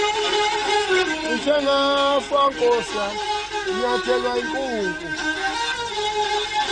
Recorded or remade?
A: recorded